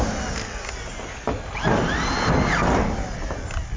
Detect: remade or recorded recorded